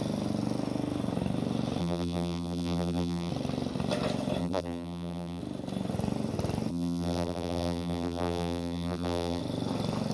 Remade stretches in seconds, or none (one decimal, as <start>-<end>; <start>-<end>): 1.8-3.3; 4.4-5.4; 6.7-9.4